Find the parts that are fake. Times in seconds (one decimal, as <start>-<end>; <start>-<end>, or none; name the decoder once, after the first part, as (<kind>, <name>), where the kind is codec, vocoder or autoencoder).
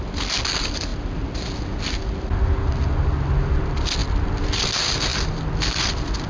none